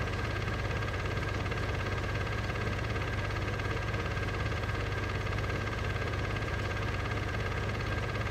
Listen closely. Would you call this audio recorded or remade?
remade